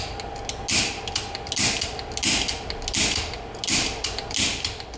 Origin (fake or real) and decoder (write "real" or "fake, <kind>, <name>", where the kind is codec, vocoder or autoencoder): real